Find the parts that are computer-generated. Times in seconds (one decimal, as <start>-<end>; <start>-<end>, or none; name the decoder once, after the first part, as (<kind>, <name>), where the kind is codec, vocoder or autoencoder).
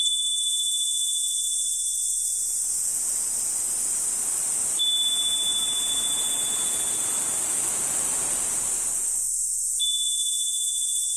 none